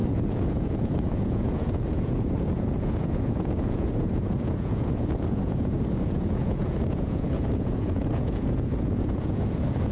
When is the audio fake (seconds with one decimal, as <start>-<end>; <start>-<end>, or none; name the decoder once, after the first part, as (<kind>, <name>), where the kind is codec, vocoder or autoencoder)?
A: 0.0-9.9 (vocoder, Vocos)